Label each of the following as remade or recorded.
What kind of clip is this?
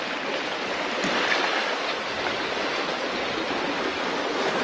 recorded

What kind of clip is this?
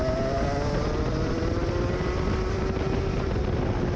recorded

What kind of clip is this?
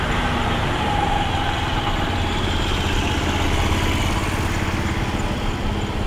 recorded